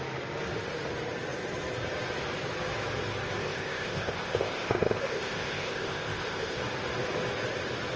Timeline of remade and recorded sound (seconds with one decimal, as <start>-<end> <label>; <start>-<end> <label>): 0.0-3.4 recorded; 3.4-6.6 remade; 6.6-8.0 recorded